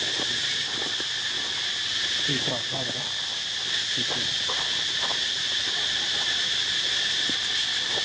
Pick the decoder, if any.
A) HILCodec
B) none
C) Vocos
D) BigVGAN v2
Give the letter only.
B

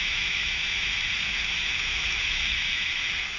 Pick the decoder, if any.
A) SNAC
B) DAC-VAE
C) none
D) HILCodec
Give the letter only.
B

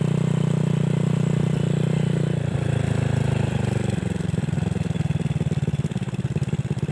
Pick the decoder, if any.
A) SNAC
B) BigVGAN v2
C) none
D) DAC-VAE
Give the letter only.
C